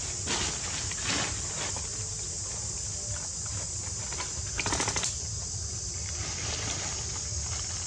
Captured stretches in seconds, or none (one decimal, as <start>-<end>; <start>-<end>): 0.0-7.9